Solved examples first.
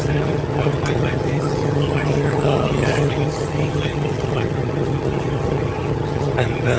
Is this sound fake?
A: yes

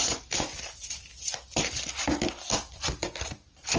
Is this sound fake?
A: no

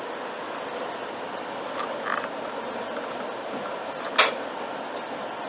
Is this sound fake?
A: no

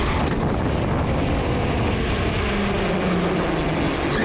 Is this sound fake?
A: no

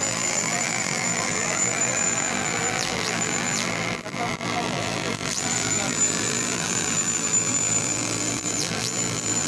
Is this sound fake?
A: yes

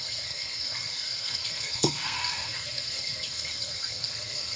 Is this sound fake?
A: yes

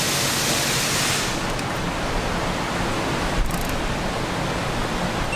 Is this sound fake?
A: no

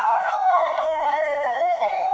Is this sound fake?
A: yes